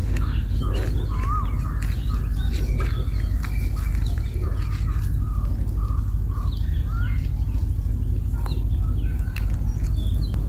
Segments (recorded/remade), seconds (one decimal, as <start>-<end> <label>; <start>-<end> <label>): 0.0-0.6 remade; 0.6-10.5 recorded

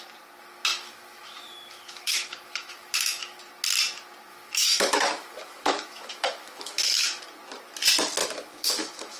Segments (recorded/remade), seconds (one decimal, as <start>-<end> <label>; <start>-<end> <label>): 0.0-0.7 recorded; 0.7-3.4 remade; 3.4-4.3 recorded; 4.3-7.2 remade; 7.2-8.2 recorded; 8.2-9.2 remade

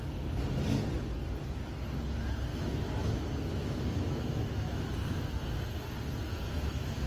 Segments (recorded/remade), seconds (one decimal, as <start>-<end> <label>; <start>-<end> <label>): 0.0-2.5 recorded; 2.5-3.1 remade; 3.1-3.6 recorded; 3.6-4.9 remade; 4.9-7.1 recorded

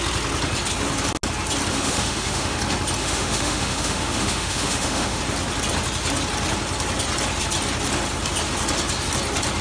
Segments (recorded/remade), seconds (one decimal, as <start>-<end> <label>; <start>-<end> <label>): 0.0-1.7 recorded; 1.7-2.6 remade; 2.6-3.0 recorded; 3.0-5.2 remade; 5.2-9.6 recorded

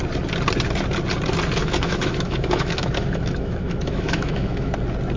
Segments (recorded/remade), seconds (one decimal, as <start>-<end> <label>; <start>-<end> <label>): 0.0-1.6 recorded; 1.6-4.7 remade; 4.7-5.2 recorded